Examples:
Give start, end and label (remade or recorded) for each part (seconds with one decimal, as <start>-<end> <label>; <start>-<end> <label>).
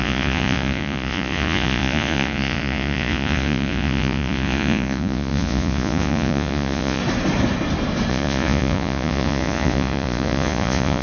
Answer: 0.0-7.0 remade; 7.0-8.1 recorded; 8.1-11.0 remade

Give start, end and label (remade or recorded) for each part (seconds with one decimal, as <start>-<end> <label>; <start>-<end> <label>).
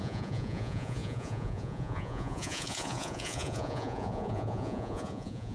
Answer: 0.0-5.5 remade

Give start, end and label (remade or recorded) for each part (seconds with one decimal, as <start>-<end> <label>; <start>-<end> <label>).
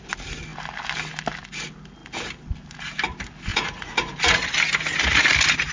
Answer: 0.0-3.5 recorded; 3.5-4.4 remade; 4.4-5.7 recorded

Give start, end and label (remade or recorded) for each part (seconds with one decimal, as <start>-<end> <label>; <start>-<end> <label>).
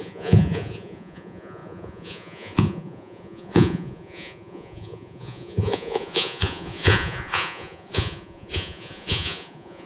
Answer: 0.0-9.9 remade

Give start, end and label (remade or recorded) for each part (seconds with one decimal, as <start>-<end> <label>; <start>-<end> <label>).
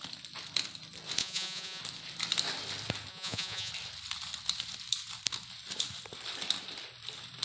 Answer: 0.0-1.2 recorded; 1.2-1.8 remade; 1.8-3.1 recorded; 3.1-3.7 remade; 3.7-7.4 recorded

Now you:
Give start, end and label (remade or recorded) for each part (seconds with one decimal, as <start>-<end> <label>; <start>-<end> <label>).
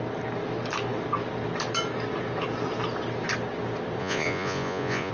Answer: 0.0-4.0 recorded; 4.0-5.1 remade